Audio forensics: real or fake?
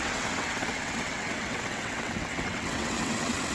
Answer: fake